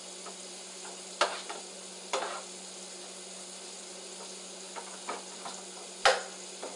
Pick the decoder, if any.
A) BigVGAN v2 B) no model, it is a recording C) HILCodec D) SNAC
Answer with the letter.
B